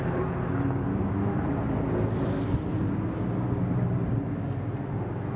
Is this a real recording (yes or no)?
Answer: yes